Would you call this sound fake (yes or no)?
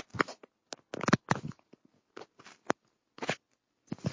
no